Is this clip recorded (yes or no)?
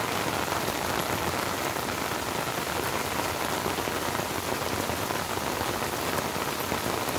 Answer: yes